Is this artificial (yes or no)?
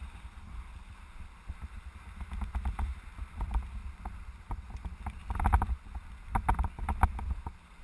no